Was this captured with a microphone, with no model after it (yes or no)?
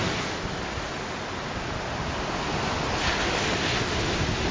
yes